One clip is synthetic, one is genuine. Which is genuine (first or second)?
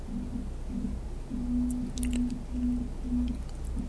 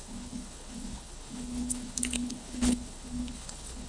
first